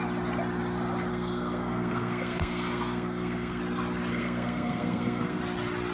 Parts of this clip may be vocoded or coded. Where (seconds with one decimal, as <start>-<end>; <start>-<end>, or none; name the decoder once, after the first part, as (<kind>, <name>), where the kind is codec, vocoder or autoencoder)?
1.1-3.6 (codec, SNAC); 4.1-5.4

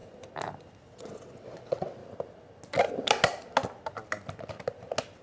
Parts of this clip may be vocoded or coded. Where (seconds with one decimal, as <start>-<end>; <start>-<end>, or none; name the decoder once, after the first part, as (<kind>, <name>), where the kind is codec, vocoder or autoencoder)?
0.8-2.0 (vocoder, WaveNeXt)